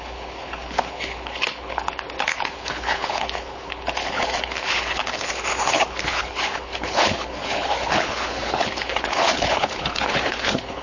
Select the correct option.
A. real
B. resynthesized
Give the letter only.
B